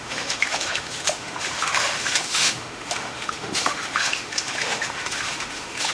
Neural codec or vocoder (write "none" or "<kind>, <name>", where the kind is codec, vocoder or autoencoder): autoencoder, DAC-VAE